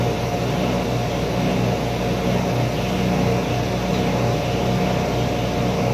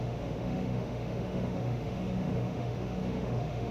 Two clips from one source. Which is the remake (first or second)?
second